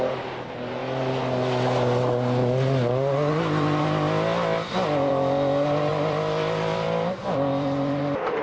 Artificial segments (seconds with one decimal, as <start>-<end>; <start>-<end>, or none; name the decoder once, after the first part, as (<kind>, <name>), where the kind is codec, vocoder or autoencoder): 0.0-0.8 (vocoder, BigVGAN v2); 5.1-8.4